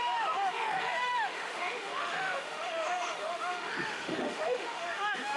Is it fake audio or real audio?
fake